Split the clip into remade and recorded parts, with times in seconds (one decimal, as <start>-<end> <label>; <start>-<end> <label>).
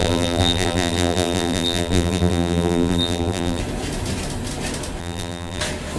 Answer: 0.0-3.6 remade; 3.6-5.0 recorded; 5.0-5.6 remade; 5.6-6.0 recorded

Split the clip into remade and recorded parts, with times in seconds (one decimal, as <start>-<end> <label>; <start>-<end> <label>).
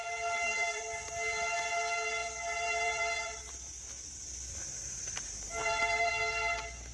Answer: 0.0-0.8 remade; 0.8-2.2 recorded; 2.2-4.6 remade; 4.6-5.6 recorded; 5.6-6.1 remade; 6.1-6.9 recorded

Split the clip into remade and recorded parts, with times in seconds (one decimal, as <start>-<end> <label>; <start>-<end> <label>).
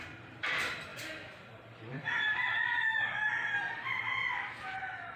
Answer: 0.0-5.2 remade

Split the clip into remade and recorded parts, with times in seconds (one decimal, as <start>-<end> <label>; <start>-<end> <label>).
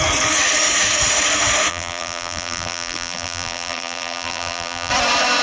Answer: 0.0-1.7 recorded; 1.7-4.9 remade; 4.9-5.4 recorded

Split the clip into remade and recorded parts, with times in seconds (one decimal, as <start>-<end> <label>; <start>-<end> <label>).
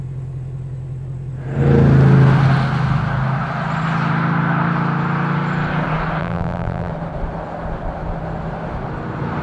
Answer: 0.0-6.2 recorded; 6.2-6.9 remade; 6.9-9.4 recorded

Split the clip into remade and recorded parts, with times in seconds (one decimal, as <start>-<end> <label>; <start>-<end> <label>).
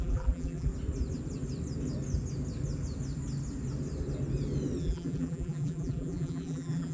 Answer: 0.0-0.7 remade; 0.7-4.8 recorded; 4.8-6.9 remade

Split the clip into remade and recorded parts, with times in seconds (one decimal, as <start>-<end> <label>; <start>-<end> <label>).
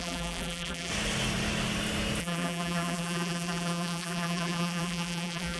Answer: 0.0-0.9 remade; 0.9-2.2 recorded; 2.2-5.6 remade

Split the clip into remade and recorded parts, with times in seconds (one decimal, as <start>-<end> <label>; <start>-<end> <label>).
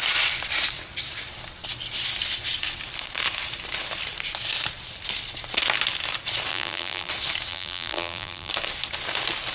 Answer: 0.0-6.5 recorded; 6.5-7.1 remade; 7.1-7.5 recorded; 7.5-8.5 remade; 8.5-9.5 recorded